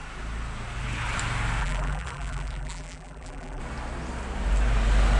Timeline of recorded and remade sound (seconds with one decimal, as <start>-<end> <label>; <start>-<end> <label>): 0.0-1.6 recorded; 1.6-3.6 remade; 3.6-5.2 recorded